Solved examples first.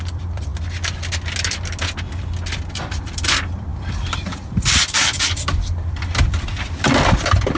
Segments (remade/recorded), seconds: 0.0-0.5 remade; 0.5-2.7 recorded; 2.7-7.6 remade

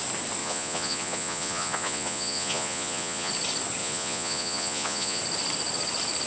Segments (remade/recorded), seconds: 0.0-0.4 recorded; 0.4-3.3 remade; 3.3-3.8 recorded; 3.8-5.2 remade; 5.2-6.3 recorded

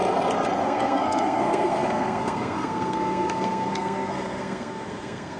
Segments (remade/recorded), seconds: 0.0-0.6 recorded; 0.6-5.4 remade

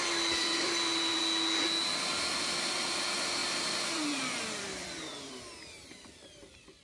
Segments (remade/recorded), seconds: 0.0-0.4 recorded; 0.4-1.2 remade; 1.2-3.4 recorded; 3.4-6.8 remade